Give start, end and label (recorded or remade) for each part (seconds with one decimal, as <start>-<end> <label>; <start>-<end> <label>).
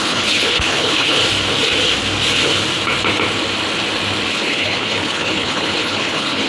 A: 0.0-1.2 remade; 1.2-4.3 recorded; 4.3-6.5 remade